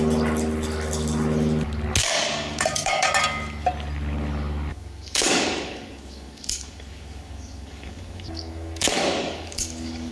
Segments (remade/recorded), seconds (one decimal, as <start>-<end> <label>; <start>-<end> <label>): 0.0-2.0 recorded; 2.0-3.1 remade; 3.1-4.7 recorded; 4.7-10.1 remade